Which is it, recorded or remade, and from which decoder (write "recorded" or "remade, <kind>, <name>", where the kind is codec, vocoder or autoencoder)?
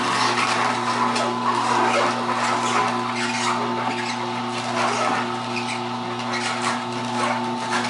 recorded